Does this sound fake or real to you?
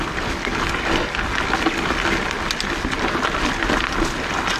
real